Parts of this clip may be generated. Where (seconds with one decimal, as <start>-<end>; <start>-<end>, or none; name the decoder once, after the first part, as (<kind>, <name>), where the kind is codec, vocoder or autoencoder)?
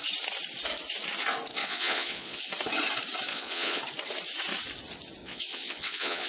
1.6-2.5 (vocoder, Vocos); 3.3-3.8; 5.2-6.3